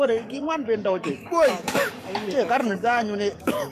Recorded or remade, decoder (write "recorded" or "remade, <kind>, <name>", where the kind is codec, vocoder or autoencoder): remade, codec, DAC